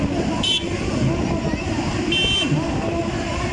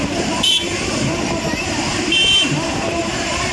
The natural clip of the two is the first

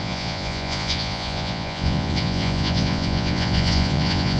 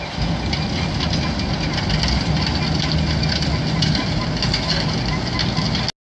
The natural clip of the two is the second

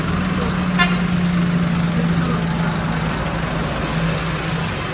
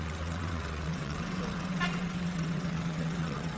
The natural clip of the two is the first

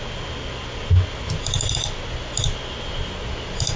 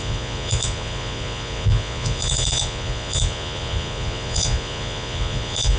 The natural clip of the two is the first